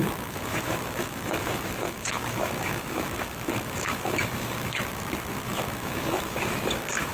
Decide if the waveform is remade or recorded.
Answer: remade